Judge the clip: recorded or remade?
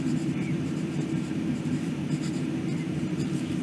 remade